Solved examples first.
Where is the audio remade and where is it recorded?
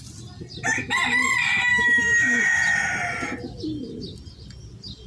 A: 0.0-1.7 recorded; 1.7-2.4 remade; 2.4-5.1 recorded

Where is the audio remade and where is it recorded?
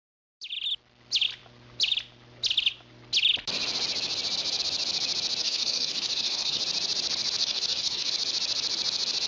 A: 0.0-5.4 recorded; 5.4-6.6 remade; 6.6-7.4 recorded; 7.4-8.1 remade; 8.1-9.3 recorded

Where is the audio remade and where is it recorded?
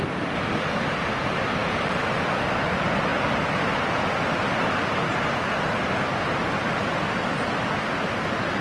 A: 0.0-8.6 recorded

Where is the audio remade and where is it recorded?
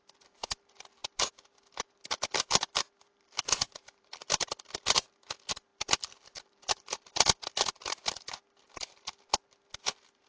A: 0.0-1.0 recorded; 1.0-4.3 remade; 4.3-5.7 recorded; 5.7-7.5 remade; 7.5-10.3 recorded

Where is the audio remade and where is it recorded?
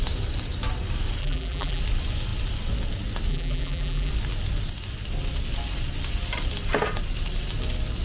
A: 0.0-1.2 recorded; 1.2-1.8 remade; 1.8-3.3 recorded; 3.3-4.1 remade; 4.1-8.0 recorded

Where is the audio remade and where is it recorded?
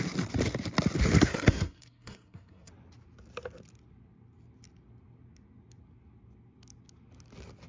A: 0.0-1.3 recorded; 1.3-2.7 remade; 2.7-7.7 recorded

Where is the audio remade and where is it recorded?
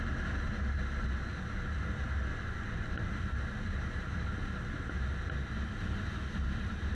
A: 0.0-2.3 recorded; 2.3-3.1 remade; 3.1-6.9 recorded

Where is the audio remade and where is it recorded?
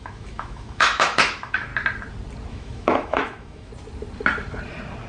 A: 0.0-1.7 remade; 1.7-2.5 recorded; 2.5-3.7 remade; 3.7-5.1 recorded